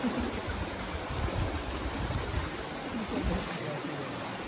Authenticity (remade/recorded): recorded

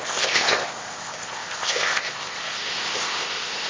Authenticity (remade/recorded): remade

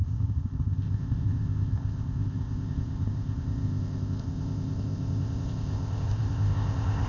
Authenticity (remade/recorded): remade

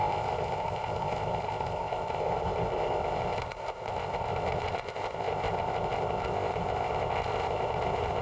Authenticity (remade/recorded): remade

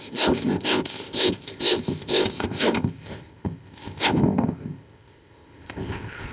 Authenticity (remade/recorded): remade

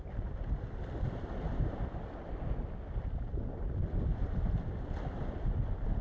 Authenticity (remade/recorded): recorded